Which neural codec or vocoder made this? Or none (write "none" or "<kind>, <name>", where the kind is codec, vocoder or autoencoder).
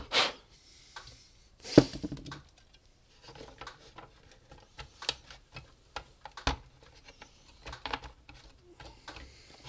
none